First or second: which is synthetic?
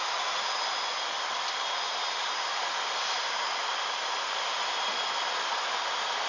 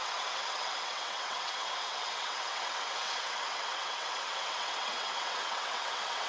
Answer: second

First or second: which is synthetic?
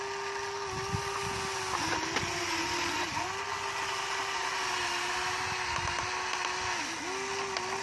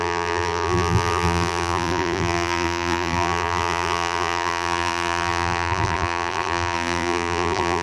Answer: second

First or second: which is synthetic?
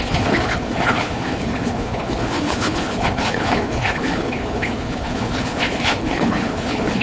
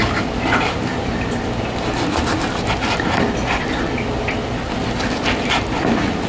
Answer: first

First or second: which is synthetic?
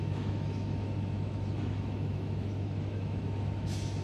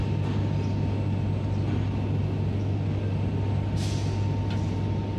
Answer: first